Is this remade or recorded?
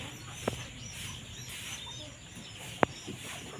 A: recorded